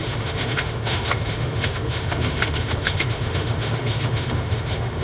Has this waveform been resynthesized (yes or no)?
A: yes